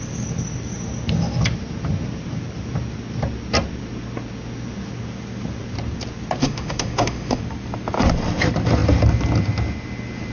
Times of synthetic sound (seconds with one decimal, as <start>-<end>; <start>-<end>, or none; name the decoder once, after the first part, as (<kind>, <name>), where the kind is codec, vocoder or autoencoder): 6.4-7.4 (autoencoder, DAC-VAE)